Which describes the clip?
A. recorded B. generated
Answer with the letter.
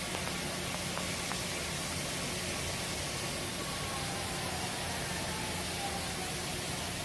A